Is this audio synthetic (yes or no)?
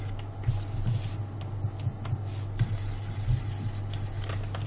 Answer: no